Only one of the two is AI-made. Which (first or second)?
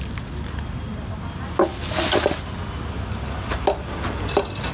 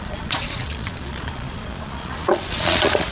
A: second